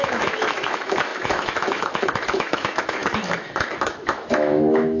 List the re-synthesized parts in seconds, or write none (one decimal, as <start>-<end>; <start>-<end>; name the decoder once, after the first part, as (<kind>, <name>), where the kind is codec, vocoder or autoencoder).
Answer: 0.0-5.0 (autoencoder, DAC-VAE)